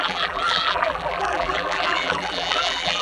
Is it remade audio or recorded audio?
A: remade